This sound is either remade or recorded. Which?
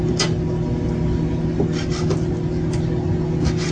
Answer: recorded